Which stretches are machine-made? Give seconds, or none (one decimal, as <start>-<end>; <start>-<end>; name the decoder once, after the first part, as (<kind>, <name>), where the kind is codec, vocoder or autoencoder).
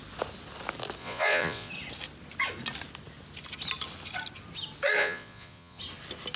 1.0-1.7 (vocoder, Vocos); 5.0-5.8